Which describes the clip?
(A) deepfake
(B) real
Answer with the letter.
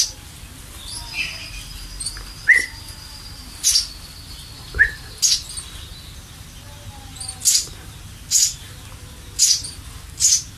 B